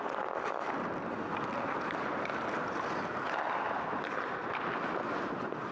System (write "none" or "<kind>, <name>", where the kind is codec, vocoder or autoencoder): none